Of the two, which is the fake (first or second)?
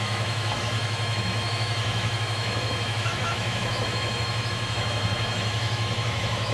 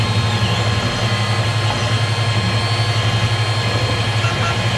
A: first